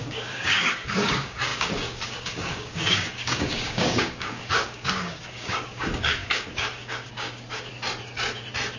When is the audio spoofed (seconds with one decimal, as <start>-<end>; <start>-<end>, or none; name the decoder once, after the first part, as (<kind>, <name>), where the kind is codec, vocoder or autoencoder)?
0.0-7.7 (codec, DAC)